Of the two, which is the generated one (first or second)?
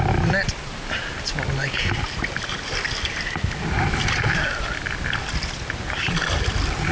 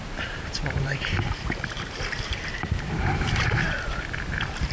second